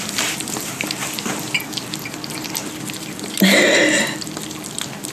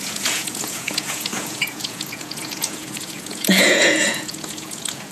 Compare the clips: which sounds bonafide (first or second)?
first